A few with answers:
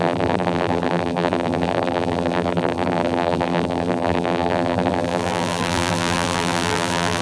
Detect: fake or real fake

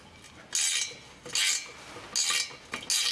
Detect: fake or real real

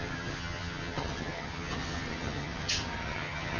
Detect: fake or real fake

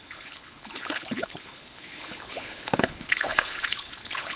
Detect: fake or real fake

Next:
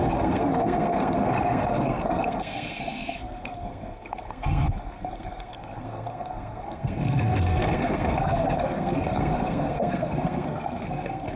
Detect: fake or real fake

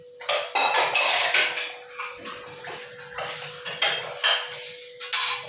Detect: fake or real real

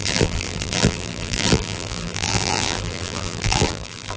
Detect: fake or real fake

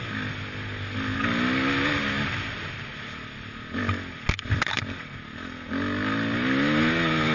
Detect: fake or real real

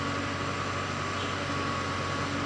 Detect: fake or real real